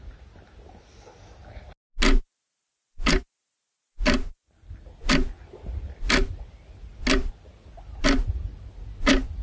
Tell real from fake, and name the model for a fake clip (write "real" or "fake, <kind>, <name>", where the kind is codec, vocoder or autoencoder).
real